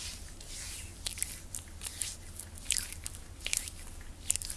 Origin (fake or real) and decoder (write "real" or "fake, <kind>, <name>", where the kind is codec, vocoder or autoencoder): real